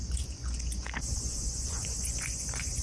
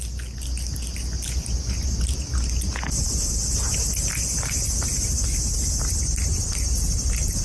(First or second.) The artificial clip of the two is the first